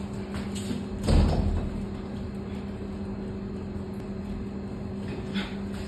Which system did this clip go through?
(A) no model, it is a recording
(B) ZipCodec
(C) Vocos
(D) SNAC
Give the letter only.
A